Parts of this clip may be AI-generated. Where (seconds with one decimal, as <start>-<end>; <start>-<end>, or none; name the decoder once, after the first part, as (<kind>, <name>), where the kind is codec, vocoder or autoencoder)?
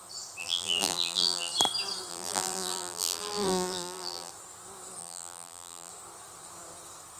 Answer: 0.4-1.5 (vocoder, BigVGAN v2); 2.1-4.3; 5.0-5.9